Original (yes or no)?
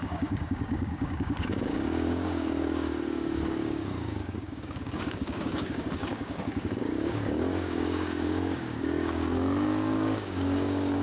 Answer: no